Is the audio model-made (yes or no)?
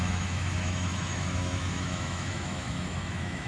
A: yes